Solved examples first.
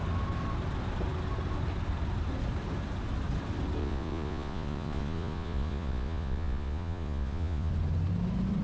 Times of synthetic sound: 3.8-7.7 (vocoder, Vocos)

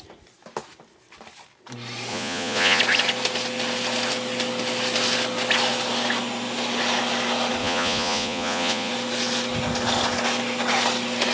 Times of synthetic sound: 2.1-2.8 (vocoder, Vocos); 7.6-8.9

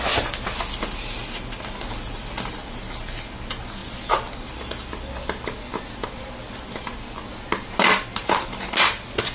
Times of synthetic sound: none